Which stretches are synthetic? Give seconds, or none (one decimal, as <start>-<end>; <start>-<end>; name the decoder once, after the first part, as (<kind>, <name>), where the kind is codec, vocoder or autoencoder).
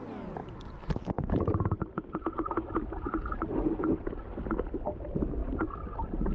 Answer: 0.4-4.2 (vocoder, BigVGAN v2); 5.4-6.3